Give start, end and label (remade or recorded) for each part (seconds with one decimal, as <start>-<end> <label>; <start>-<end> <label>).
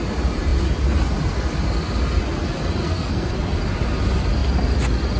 0.0-2.8 recorded; 2.8-3.3 remade; 3.3-5.2 recorded